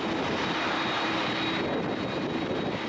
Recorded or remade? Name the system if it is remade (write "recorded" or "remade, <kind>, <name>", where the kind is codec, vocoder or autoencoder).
recorded